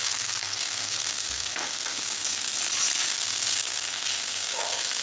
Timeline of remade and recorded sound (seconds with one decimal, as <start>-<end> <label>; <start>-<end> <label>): 0.0-2.5 remade; 2.5-3.1 recorded; 3.1-5.0 remade